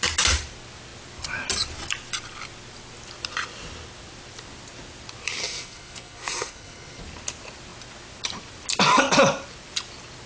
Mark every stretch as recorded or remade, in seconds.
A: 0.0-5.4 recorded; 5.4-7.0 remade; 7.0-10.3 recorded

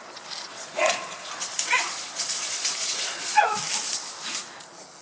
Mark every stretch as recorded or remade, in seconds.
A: 0.0-0.5 recorded; 0.5-3.5 remade; 3.5-5.0 recorded

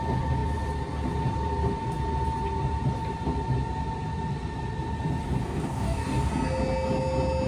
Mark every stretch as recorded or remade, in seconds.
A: 0.0-5.4 recorded; 5.4-6.3 remade; 6.3-7.5 recorded

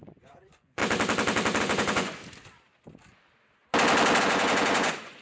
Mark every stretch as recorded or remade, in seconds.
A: 0.0-0.8 remade; 0.8-1.6 recorded; 1.6-2.2 remade; 2.2-4.2 recorded; 4.2-5.2 remade

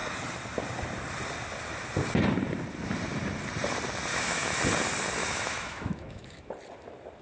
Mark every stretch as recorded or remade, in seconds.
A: 0.0-4.1 recorded; 4.1-4.6 remade; 4.6-5.2 recorded; 5.2-6.5 remade; 6.5-7.2 recorded

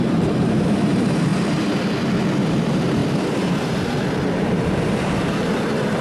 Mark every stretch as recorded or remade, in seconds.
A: 0.0-1.3 remade; 1.3-2.5 recorded; 2.5-3.0 remade; 3.0-4.3 recorded; 4.3-6.0 remade

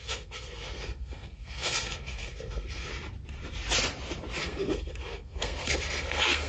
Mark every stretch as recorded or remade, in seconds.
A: 0.0-2.9 remade; 2.9-4.4 recorded; 4.4-6.5 remade

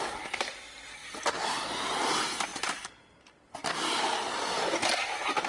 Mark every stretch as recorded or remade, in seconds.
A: 0.0-5.5 recorded